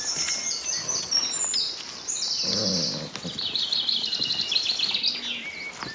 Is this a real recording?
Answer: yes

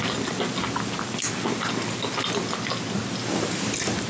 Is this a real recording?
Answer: yes